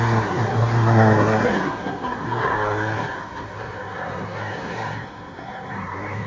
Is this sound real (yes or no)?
no